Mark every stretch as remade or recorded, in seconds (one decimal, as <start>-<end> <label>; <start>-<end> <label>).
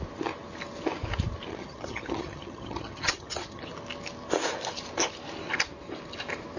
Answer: 0.0-1.5 recorded; 1.5-3.6 remade; 3.6-6.6 recorded